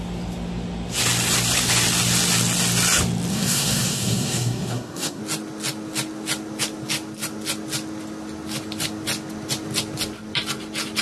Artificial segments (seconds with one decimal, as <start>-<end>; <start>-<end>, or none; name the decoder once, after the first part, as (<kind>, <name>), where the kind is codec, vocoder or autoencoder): 3.3-5.2 (codec, SNAC)